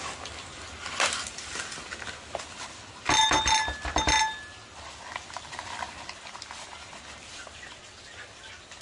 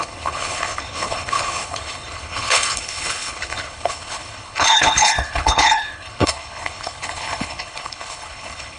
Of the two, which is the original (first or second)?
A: first